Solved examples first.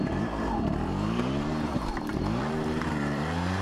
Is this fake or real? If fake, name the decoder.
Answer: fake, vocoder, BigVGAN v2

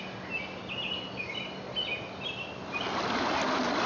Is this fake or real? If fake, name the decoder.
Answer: real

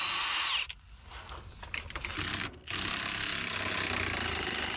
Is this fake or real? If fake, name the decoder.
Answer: real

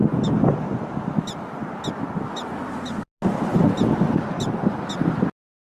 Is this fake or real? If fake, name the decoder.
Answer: real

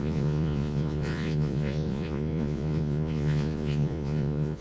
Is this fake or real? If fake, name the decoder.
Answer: fake, vocoder, Vocos